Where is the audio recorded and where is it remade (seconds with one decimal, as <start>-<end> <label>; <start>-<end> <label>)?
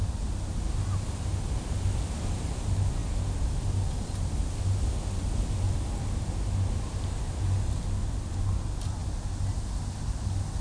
0.0-10.6 recorded